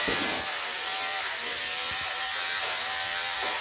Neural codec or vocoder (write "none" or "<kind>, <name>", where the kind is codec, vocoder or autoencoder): vocoder, BigVGAN v2